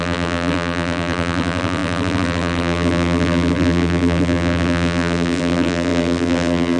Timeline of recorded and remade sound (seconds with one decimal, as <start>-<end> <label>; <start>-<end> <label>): 0.0-6.8 remade